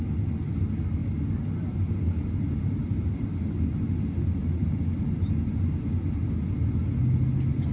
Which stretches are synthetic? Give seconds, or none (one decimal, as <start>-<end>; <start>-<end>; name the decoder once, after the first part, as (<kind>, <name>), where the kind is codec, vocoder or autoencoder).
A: none